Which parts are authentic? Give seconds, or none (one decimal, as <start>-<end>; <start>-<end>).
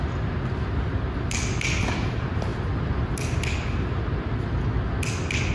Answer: 0.0-5.5